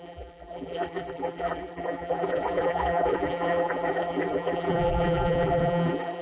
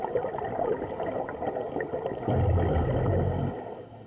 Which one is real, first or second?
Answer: second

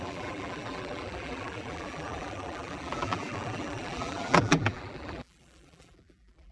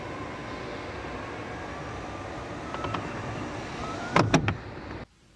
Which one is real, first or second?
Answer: second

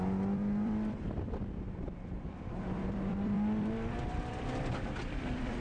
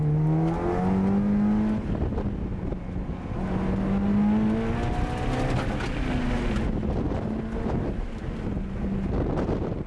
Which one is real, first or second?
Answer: second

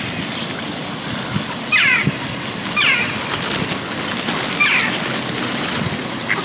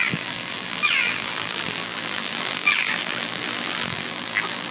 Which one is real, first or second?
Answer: first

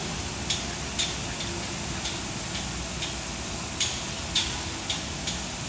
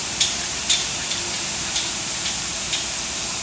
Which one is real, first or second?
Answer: first